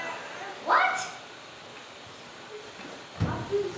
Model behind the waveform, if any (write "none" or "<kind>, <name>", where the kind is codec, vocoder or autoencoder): none